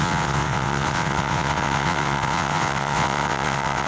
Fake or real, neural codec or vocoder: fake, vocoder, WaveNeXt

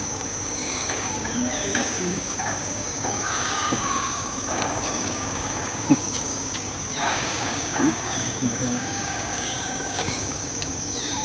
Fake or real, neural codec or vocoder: fake, codec, DAC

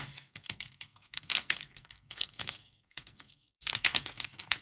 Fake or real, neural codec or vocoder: fake, codec, SNAC